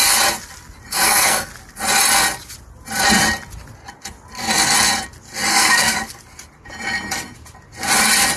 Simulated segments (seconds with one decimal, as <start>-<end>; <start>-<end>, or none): 0.9-1.5; 5.5-6.2